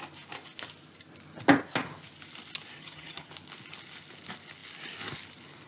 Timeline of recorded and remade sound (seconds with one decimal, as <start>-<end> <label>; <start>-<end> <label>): 0.0-2.8 recorded; 2.8-3.3 remade; 3.3-5.7 recorded